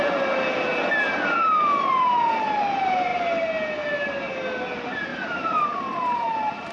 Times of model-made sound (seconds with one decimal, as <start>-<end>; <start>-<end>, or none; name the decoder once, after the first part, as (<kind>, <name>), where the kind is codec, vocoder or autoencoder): none